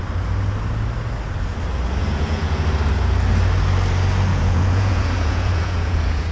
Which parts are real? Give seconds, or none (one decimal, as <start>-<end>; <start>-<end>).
0.0-2.0; 2.6-4.3